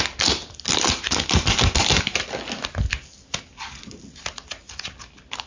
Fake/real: real